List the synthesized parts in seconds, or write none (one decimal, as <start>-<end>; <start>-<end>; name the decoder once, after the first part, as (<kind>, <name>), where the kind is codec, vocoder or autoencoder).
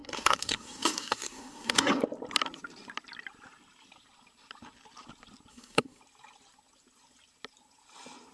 0.0-2.0 (codec, SNAC); 5.5-6.0